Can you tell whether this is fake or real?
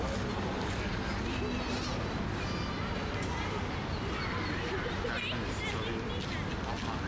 real